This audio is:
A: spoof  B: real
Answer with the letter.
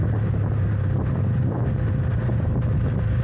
B